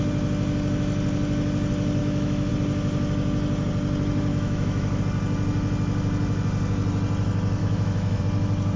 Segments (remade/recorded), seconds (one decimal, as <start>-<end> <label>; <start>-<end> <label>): 0.0-2.0 recorded; 2.0-2.5 remade; 2.5-4.3 recorded; 4.3-5.0 remade; 5.0-7.6 recorded; 7.6-8.2 remade; 8.2-8.8 recorded